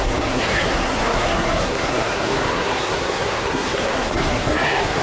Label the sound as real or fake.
fake